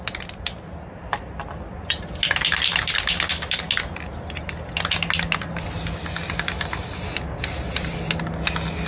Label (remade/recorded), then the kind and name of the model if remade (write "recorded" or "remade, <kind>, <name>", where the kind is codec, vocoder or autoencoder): recorded